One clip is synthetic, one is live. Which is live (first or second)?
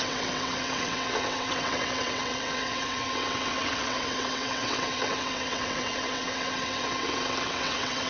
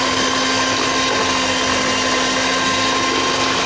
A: second